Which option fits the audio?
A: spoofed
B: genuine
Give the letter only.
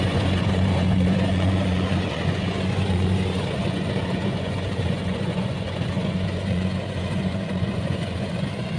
A